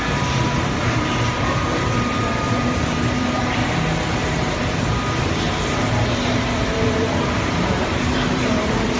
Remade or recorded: remade